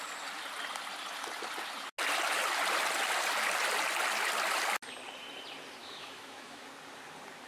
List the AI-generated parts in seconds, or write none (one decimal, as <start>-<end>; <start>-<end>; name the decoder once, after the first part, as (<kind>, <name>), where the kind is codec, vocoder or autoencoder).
5.8-6.7 (autoencoder, DAC-VAE)

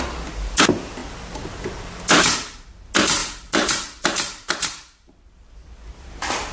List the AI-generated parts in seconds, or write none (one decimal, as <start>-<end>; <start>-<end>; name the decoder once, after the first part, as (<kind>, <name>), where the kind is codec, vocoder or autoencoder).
3.2-5.5 (vocoder, BigVGAN v2)